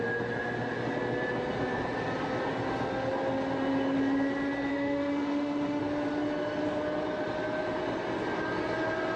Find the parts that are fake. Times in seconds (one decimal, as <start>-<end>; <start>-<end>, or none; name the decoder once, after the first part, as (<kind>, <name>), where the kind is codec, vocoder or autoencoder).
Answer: 4.7-5.8 (autoencoder, DAC-VAE)